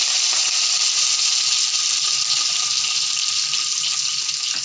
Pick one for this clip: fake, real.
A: real